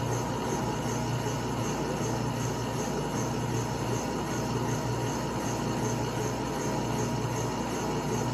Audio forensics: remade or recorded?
recorded